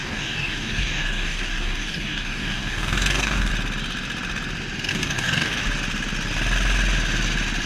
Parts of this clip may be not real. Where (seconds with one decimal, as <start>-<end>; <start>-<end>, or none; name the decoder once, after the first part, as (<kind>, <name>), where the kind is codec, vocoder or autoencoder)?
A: 0.0-3.5 (codec, DAC); 4.9-5.6